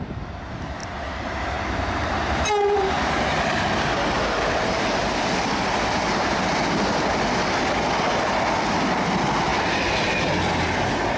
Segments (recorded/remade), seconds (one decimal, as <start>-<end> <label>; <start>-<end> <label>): 0.0-0.8 recorded; 0.8-4.7 remade; 4.7-11.2 recorded